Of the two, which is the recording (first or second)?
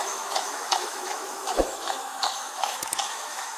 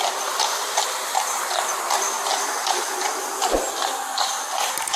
second